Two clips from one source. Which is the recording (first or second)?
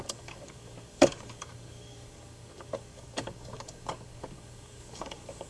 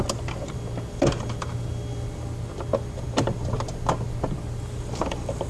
second